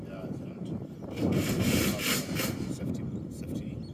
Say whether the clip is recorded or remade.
remade